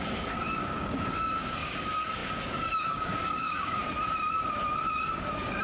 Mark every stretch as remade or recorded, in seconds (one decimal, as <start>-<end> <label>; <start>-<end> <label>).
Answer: 0.0-3.8 remade; 3.8-5.6 recorded